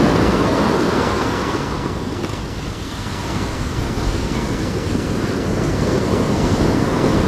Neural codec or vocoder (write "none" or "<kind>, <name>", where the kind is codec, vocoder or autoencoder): codec, SNAC